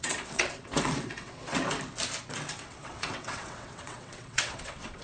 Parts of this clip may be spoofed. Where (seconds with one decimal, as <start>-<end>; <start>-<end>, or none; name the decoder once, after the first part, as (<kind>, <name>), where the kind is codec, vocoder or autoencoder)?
0.0-1.6 (vocoder, WaveNeXt); 2.5-5.0

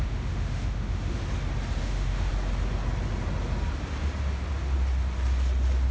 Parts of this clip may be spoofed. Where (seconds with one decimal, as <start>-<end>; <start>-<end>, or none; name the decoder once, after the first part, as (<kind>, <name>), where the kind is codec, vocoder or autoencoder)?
0.0-1.2 (autoencoder, DAC-VAE); 1.8-2.3